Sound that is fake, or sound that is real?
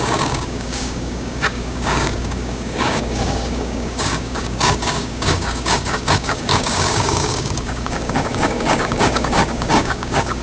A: fake